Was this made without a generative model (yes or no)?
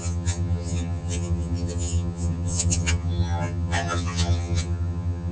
no